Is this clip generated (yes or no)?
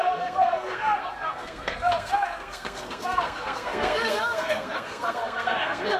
yes